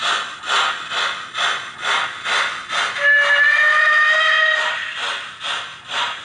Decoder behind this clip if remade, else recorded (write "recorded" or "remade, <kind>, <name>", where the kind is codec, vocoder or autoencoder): recorded